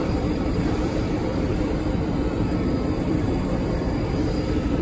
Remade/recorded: remade